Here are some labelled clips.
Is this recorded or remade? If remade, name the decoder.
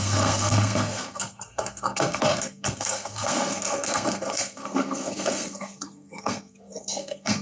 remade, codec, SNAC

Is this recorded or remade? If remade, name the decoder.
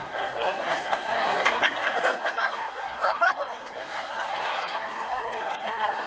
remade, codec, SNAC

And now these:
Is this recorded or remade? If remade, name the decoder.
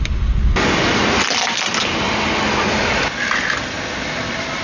recorded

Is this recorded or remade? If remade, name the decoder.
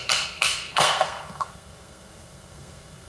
remade, codec, SNAC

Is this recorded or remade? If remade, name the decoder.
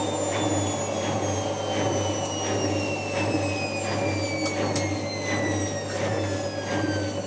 recorded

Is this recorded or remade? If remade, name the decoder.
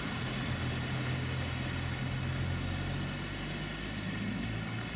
recorded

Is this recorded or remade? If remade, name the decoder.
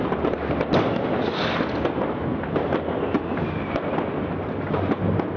recorded